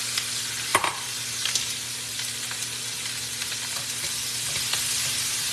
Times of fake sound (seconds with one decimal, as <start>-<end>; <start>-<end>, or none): 0.7-2.1